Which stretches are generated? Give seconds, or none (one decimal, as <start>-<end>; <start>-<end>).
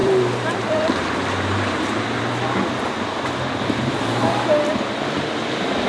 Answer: 0.0-2.2